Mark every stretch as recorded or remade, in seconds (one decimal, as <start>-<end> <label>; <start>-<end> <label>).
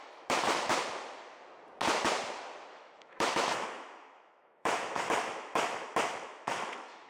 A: 0.0-0.7 remade; 0.7-2.7 recorded; 2.7-7.1 remade